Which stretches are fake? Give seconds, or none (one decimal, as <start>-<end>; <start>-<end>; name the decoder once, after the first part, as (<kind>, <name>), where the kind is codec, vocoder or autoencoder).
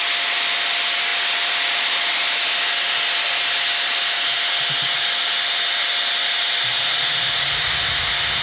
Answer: none